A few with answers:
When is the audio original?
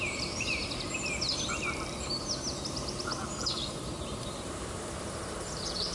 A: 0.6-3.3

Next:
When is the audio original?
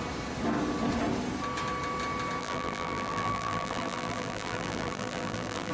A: 0.0-2.4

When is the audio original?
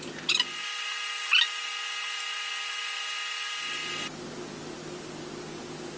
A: 0.0-6.0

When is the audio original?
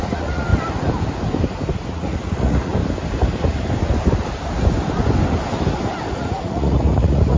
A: 0.5-1.9; 2.7-6.1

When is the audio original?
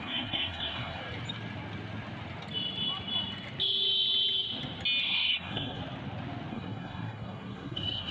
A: 1.0-5.0; 5.8-6.5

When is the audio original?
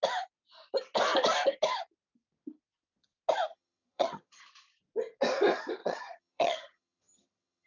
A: 0.0-3.5; 4.4-5.8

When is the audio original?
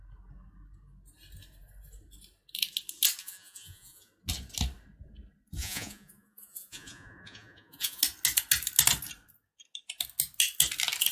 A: 0.0-3.2; 4.1-5.6; 8.0-11.1